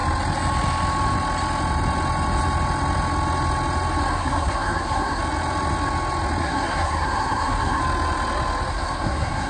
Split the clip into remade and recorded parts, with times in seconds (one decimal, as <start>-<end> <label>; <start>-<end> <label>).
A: 0.0-4.1 recorded; 4.1-5.2 remade; 5.2-6.4 recorded; 6.4-7.8 remade; 7.8-8.7 recorded; 8.7-9.5 remade